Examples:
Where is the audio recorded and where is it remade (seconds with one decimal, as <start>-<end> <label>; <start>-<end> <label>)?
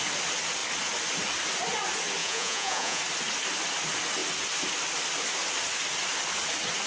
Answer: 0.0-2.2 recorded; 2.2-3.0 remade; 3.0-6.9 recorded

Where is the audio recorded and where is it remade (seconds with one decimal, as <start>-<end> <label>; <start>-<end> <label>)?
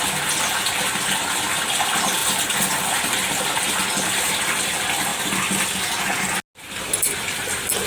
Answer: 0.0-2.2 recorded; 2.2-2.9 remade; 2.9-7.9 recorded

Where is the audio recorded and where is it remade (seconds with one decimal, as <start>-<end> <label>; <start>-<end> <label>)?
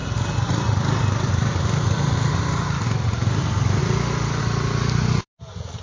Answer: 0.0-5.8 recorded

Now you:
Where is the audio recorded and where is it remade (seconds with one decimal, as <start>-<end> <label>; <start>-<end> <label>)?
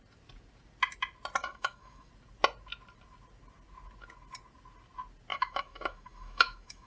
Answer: 0.0-1.4 recorded; 1.4-2.1 remade; 2.1-5.3 recorded; 5.3-6.9 remade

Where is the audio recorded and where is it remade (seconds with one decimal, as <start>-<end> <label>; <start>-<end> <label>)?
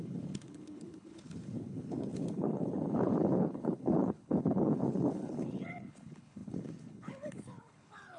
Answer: 0.0-8.2 remade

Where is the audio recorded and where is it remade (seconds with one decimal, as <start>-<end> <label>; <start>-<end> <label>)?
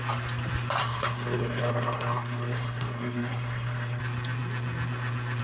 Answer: 0.0-0.8 recorded; 0.8-4.0 remade; 4.0-5.4 recorded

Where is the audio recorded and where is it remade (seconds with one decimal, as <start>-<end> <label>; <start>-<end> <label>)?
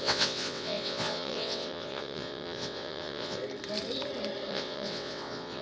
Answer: 0.0-3.4 remade; 3.4-4.5 recorded; 4.5-5.6 remade